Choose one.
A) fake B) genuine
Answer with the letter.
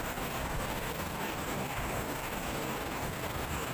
A